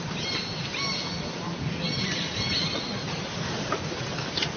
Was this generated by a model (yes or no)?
no